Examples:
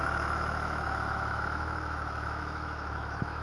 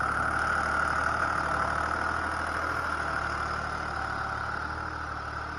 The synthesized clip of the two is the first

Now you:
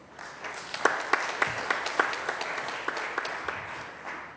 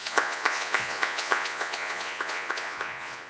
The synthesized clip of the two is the second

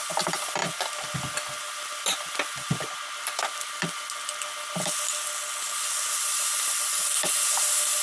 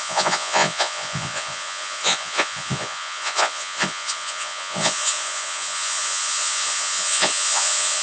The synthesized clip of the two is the second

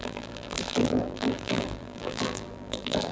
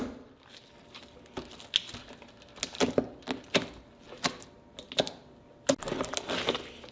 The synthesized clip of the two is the first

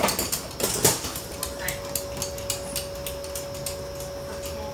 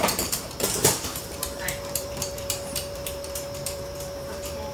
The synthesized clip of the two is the second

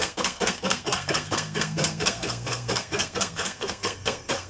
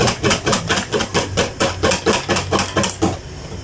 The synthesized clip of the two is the first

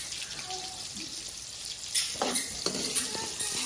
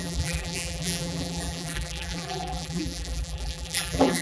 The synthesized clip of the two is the second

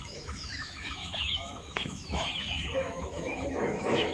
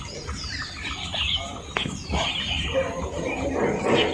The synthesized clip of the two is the first